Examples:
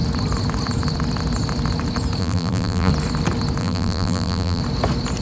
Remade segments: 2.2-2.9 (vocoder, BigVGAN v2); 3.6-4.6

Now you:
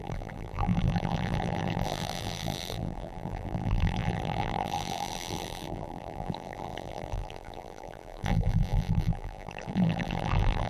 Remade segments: 0.0-10.7 (vocoder, BigVGAN v2)

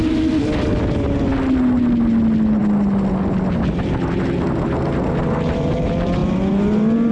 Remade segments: 6.2-7.1 (vocoder, BigVGAN v2)

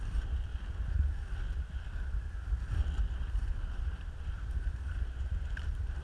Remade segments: 0.0-0.5 (vocoder, BigVGAN v2); 3.1-6.0

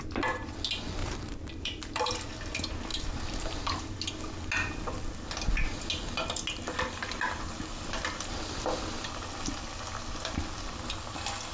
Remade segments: 1.0-2.1 (vocoder, BigVGAN v2); 2.9-3.8

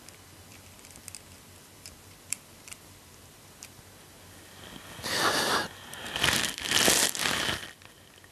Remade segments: 0.5-3.8 (vocoder, BigVGAN v2)

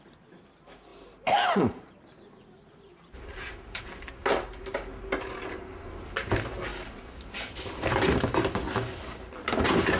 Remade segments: 0.9-3.8 (vocoder, BigVGAN v2)

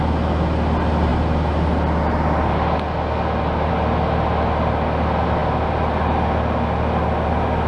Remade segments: none